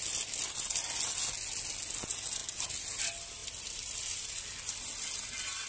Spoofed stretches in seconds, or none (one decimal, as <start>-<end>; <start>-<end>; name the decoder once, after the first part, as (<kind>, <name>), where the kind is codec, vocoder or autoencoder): none